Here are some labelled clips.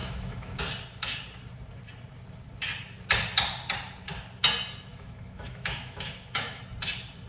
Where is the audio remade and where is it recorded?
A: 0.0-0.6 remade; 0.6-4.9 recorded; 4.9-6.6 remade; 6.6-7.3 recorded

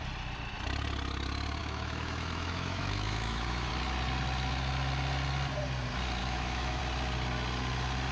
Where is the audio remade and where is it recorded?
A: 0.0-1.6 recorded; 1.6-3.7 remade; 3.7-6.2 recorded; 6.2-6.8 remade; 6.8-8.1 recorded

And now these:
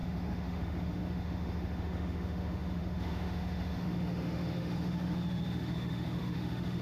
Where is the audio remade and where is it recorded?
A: 0.0-6.8 remade

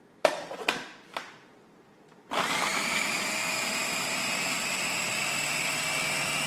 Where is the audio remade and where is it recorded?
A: 0.0-2.7 recorded; 2.7-3.2 remade; 3.2-6.5 recorded

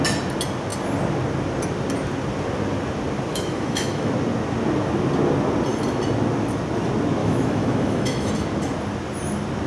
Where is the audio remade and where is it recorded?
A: 0.0-3.3 recorded; 3.3-4.1 remade; 4.1-7.2 recorded; 7.2-8.3 remade; 8.3-9.7 recorded